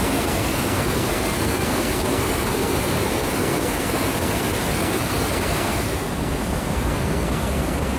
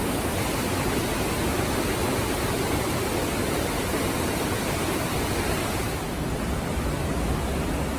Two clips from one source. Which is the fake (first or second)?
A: first